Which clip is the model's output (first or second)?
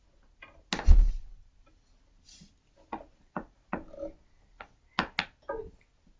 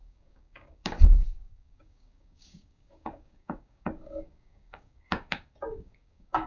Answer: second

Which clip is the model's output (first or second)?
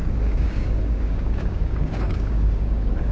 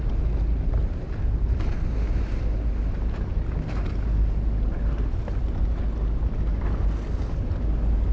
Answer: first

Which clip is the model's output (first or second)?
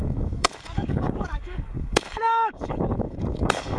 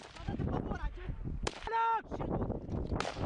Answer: first